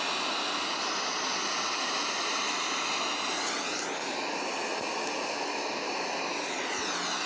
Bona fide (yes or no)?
yes